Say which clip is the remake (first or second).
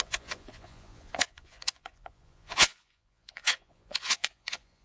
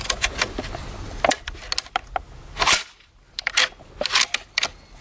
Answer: first